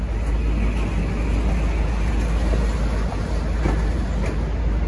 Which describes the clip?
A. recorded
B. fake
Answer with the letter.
A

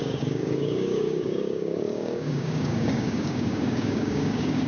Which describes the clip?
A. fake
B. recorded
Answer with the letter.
A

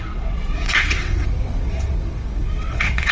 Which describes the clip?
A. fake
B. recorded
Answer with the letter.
A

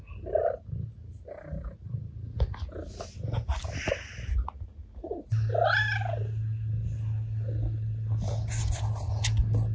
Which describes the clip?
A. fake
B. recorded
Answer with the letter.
B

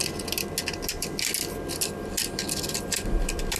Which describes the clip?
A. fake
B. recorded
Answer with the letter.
B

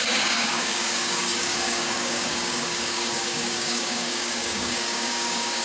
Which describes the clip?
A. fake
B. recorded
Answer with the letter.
A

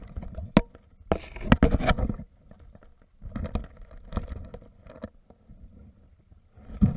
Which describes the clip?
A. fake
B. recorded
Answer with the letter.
B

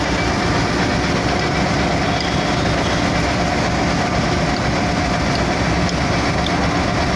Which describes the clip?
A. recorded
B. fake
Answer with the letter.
A